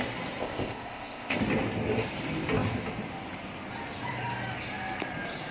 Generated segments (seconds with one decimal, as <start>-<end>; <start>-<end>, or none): 0.4-1.4

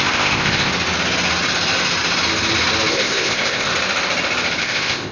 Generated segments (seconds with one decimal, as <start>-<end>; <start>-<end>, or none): 0.0-0.7; 2.9-3.7; 4.6-5.1